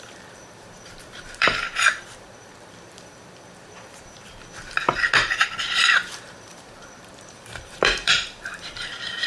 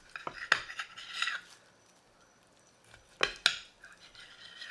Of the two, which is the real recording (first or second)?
second